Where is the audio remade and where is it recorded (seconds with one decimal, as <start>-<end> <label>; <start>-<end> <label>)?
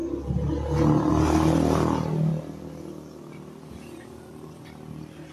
0.0-1.1 recorded; 1.1-5.3 remade